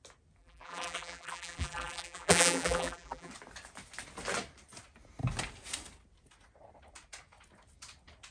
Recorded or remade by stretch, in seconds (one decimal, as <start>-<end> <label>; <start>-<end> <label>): 0.0-0.4 recorded; 0.4-3.3 remade; 3.3-8.3 recorded